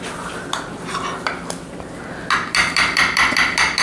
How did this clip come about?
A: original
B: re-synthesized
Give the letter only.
A